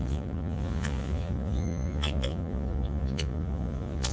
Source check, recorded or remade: remade